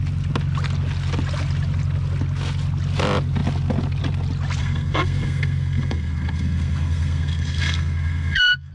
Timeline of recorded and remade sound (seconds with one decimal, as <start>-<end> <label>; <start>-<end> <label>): 0.0-4.6 recorded; 4.6-8.7 remade